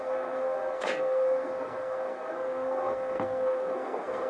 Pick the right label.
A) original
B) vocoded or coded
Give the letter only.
B